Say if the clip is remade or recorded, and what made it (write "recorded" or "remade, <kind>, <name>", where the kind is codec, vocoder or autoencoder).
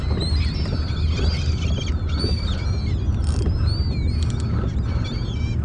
recorded